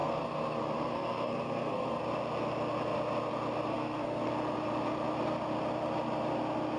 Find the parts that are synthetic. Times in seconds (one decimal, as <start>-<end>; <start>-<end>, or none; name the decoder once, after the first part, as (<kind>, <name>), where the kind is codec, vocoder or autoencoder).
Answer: 0.0-2.0 (codec, SNAC); 3.7-4.3